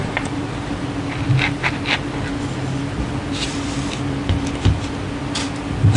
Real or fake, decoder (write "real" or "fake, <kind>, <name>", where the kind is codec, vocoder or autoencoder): real